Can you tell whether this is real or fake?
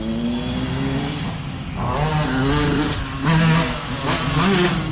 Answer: real